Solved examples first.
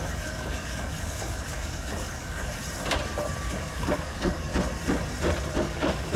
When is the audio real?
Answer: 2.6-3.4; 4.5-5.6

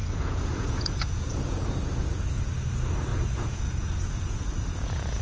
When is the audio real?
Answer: 2.5-3.1

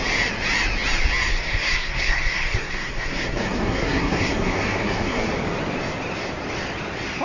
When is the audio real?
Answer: 0.0-1.3; 5.3-7.2

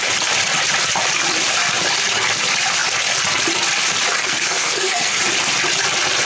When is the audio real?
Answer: 0.0-4.2; 5.2-6.3

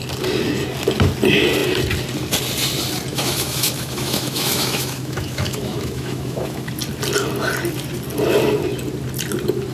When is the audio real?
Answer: 0.0-3.1; 6.7-9.7